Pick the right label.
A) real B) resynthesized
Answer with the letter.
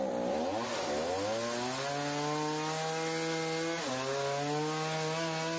A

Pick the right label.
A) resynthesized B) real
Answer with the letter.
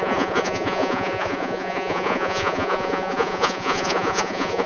A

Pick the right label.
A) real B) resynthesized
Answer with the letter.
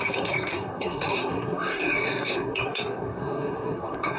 B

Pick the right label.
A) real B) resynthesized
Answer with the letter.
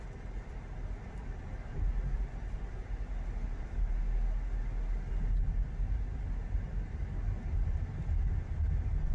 A